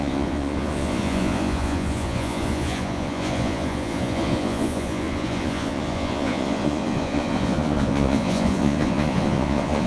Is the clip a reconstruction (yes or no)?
yes